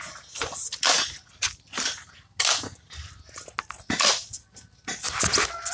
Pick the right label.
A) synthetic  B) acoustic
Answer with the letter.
B